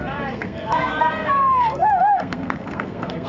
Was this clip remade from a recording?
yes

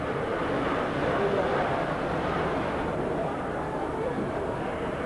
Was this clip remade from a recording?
no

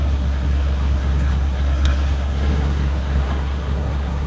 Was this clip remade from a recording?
yes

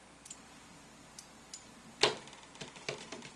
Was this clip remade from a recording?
no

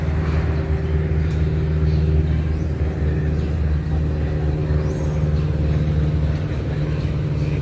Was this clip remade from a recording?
no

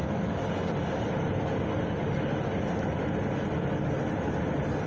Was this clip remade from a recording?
no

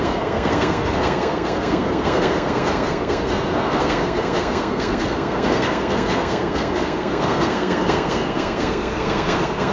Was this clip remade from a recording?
yes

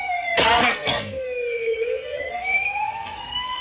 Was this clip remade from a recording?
yes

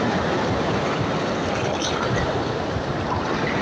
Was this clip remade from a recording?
no